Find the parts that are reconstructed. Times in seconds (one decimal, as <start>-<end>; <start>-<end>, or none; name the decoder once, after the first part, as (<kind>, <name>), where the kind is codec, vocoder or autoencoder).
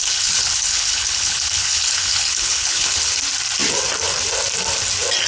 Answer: 0.0-3.2 (codec, HILCodec)